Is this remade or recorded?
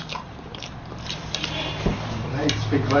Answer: remade